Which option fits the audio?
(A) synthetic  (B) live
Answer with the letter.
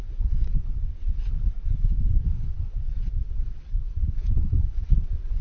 A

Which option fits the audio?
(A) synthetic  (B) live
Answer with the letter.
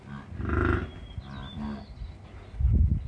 B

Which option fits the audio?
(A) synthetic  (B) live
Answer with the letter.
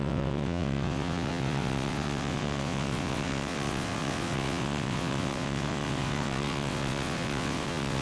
A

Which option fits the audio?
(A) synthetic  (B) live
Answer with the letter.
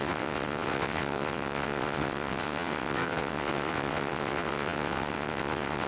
A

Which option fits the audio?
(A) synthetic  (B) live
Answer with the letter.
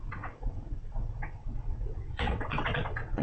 A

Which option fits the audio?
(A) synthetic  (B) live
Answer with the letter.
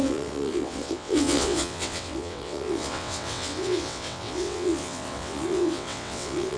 A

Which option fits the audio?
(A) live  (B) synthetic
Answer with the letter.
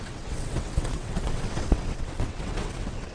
B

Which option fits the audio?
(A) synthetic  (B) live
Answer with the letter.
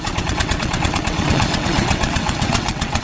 A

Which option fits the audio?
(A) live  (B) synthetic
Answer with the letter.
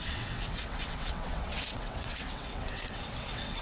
B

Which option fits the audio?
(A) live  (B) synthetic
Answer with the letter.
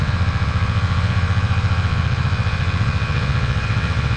B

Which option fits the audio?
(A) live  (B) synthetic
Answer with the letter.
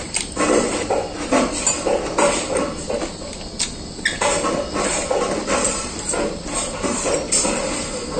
A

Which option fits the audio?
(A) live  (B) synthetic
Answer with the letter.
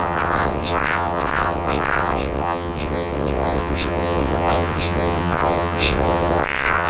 B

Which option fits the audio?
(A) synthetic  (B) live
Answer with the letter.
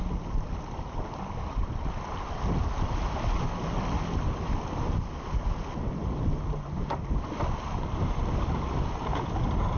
B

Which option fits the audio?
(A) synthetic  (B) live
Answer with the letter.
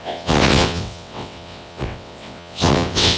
A